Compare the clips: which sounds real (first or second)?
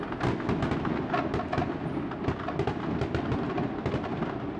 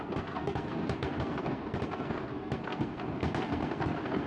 first